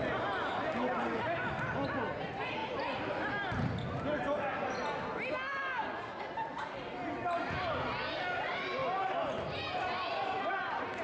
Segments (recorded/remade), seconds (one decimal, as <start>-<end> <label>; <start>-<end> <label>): 0.0-11.0 recorded